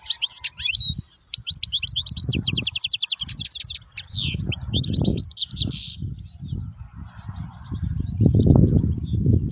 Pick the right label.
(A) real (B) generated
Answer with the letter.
A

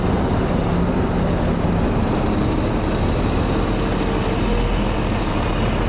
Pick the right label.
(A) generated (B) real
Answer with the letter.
B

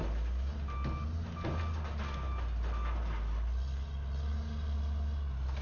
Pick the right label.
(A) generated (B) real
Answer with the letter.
B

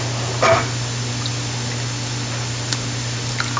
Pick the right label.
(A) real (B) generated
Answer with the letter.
A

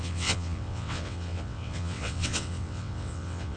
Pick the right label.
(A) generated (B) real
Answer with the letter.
A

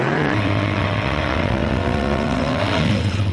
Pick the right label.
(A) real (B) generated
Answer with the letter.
B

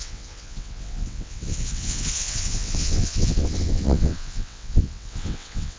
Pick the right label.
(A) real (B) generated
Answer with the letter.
B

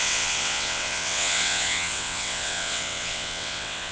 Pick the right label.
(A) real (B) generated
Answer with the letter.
B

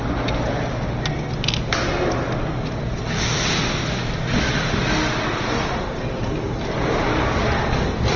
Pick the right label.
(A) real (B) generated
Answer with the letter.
A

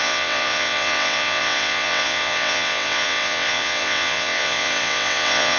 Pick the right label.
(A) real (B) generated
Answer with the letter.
B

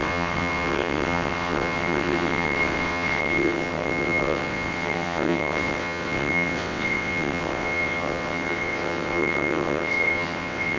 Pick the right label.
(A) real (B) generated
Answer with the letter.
B